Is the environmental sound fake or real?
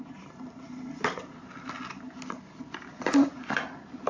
real